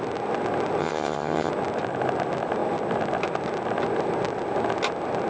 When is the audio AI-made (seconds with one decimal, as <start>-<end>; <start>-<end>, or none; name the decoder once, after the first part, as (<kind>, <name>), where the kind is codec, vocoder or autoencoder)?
0.8-1.5 (vocoder, HiFi-GAN)